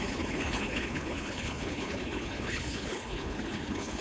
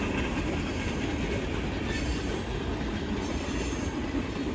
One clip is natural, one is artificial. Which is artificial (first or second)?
first